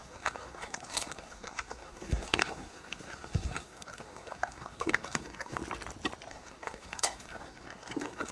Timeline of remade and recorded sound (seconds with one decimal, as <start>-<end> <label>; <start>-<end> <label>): 0.0-5.6 remade; 5.6-6.3 recorded; 6.3-8.3 remade